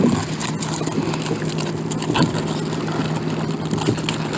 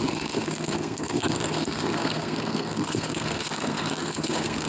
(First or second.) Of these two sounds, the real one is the first